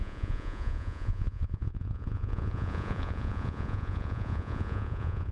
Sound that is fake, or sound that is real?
fake